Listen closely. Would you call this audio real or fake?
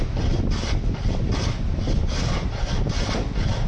real